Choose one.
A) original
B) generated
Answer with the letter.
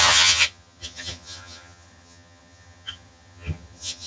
B